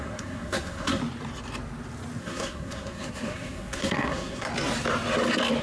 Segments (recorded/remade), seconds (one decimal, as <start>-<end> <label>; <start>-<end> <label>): 0.0-1.0 remade; 1.0-2.2 recorded; 2.2-4.5 remade; 4.5-5.6 recorded